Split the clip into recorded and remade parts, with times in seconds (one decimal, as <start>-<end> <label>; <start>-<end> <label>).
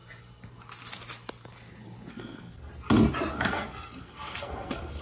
0.0-2.1 recorded; 2.1-2.7 remade; 2.7-3.3 recorded; 3.3-5.0 remade